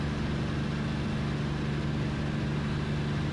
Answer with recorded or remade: recorded